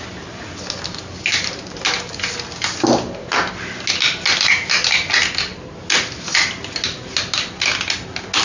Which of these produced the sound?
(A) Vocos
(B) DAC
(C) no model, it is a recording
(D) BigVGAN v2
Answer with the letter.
C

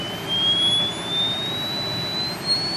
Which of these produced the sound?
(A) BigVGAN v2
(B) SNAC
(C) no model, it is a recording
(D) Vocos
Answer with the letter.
C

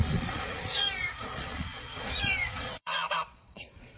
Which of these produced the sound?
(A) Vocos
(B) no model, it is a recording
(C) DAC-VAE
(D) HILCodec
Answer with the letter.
A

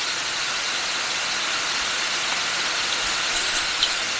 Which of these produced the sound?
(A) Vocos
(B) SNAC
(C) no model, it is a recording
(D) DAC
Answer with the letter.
C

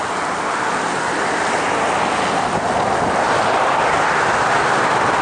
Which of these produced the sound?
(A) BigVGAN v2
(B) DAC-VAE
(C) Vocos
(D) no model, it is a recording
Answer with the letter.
D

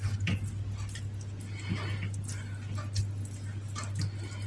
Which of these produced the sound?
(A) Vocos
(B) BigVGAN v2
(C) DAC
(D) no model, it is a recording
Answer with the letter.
D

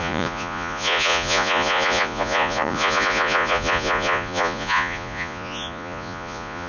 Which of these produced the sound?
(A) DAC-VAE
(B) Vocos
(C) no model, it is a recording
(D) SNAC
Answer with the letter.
B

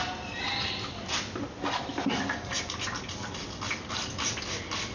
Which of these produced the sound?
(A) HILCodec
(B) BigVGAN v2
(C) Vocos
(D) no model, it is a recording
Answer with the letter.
D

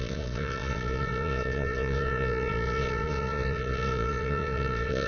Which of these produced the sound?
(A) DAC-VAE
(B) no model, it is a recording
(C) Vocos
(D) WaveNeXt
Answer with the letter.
C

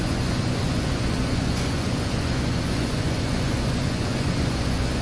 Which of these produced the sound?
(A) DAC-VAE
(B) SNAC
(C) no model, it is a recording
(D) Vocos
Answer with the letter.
D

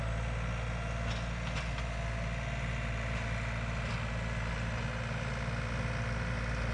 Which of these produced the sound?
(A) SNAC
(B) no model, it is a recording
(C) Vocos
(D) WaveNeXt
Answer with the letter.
B